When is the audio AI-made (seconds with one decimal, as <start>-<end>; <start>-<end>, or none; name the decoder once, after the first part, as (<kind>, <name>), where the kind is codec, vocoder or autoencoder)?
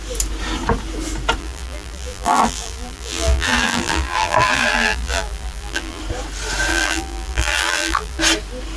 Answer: 1.4-6.0 (vocoder, BigVGAN v2); 6.7-8.2